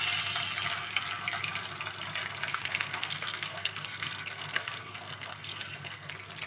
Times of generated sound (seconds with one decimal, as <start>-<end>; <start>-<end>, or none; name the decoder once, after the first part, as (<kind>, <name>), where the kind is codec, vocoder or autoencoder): 2.5-6.1 (codec, SNAC)